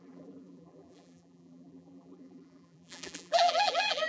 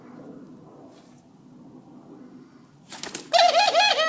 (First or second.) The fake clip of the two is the first